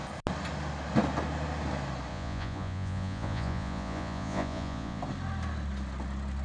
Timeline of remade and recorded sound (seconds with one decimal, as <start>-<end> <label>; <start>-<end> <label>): 0.0-2.1 recorded; 2.1-5.0 remade; 5.0-6.4 recorded